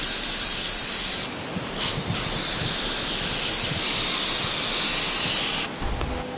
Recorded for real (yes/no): yes